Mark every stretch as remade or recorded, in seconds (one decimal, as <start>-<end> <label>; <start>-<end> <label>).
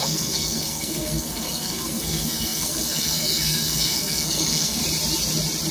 0.0-4.8 remade; 4.8-5.7 recorded